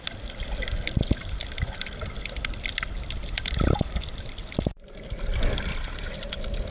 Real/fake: real